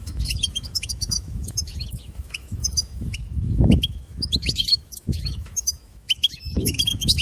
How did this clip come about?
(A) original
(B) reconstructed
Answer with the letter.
B